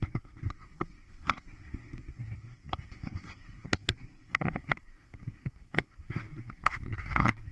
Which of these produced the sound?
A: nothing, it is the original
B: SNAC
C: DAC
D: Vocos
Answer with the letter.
B